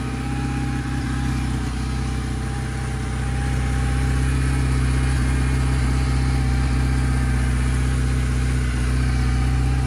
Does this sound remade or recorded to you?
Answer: recorded